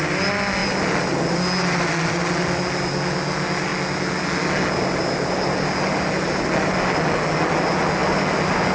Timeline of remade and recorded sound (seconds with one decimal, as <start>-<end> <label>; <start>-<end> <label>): 0.0-8.7 recorded